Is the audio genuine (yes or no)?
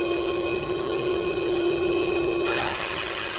no